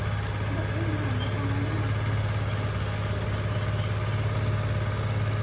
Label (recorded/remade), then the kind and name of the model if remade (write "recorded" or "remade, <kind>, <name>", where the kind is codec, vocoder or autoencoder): recorded